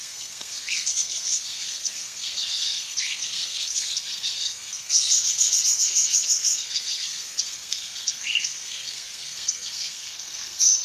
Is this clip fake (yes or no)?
yes